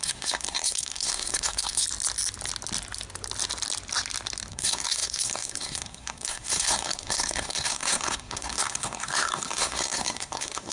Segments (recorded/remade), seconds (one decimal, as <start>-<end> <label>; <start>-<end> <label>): 0.0-1.8 remade; 1.8-4.5 recorded; 4.5-10.7 remade